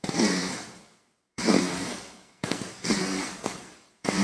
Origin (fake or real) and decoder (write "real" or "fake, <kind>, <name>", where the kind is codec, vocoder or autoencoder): fake, codec, SNAC